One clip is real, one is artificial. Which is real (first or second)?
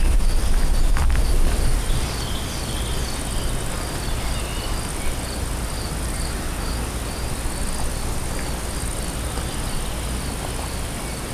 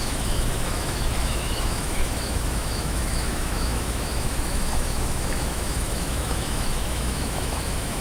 first